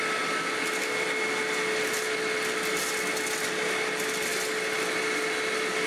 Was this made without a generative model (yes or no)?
yes